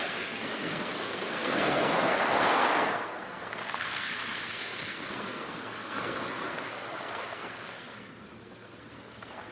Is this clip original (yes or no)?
no